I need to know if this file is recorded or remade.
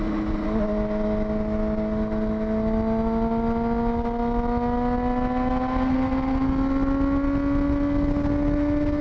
recorded